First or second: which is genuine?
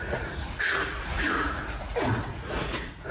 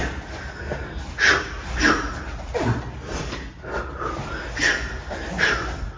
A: second